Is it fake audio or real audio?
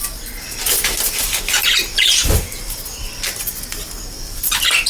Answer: fake